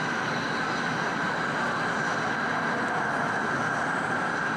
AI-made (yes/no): no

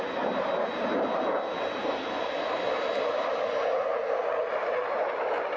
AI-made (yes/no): no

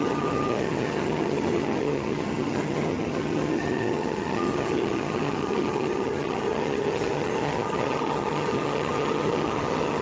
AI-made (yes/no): yes